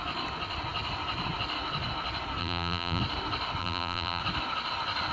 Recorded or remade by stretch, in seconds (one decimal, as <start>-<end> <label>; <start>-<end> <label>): 0.0-2.4 recorded; 2.4-3.0 remade; 3.0-3.6 recorded; 3.6-4.2 remade; 4.2-5.1 recorded